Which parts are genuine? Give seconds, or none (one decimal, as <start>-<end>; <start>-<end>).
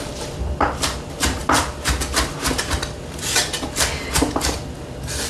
1.4-4.3